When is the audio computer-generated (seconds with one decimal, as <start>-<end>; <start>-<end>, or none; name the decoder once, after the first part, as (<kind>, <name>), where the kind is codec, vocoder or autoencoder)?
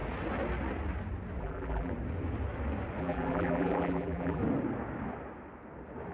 1.4-1.9 (vocoder, BigVGAN v2); 3.0-4.4